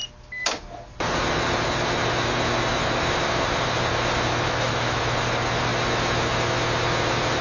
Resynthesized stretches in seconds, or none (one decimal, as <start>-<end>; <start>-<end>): 4.3-5.0